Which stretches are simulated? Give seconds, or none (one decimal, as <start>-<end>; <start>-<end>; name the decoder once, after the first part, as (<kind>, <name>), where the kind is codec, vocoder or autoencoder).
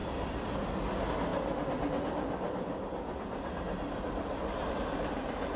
none